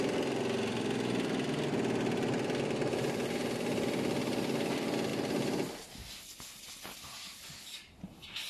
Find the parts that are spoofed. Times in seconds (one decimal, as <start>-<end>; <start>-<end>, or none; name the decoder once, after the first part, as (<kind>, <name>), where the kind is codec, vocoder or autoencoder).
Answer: none

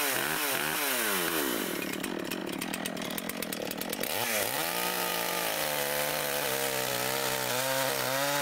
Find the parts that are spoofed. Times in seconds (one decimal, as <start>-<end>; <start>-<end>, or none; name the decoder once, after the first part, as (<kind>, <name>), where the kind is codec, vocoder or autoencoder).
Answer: none

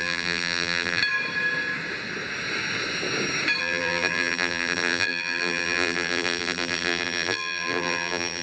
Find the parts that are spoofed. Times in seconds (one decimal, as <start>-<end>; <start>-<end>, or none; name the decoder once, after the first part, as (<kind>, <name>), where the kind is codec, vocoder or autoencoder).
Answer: 0.0-1.0 (vocoder, BigVGAN v2); 3.6-8.4

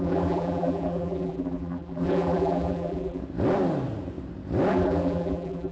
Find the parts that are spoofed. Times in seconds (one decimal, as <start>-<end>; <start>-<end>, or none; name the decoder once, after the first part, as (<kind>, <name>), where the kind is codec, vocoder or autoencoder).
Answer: 0.0-3.2 (vocoder, BigVGAN v2); 4.7-5.7

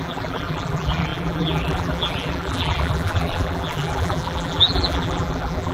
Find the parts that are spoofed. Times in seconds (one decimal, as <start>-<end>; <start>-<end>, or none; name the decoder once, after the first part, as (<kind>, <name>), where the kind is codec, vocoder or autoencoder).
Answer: 0.0-5.7 (vocoder, BigVGAN v2)

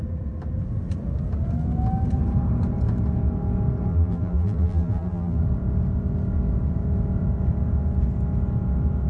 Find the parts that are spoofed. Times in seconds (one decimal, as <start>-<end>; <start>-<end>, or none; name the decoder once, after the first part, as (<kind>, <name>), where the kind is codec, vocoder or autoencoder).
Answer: 3.9-5.4 (vocoder, BigVGAN v2)

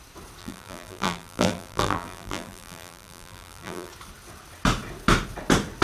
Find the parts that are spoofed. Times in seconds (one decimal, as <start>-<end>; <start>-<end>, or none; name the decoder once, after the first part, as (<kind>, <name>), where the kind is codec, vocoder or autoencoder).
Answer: 0.4-3.9 (vocoder, BigVGAN v2)

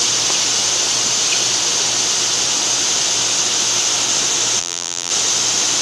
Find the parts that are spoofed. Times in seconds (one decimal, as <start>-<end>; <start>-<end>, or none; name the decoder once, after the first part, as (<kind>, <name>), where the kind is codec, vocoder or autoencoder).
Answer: 4.6-5.1 (vocoder, BigVGAN v2)